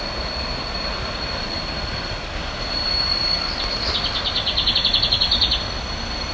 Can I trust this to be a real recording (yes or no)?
no